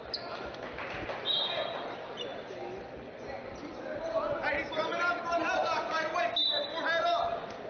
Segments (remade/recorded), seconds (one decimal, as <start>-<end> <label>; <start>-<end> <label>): 0.0-7.7 recorded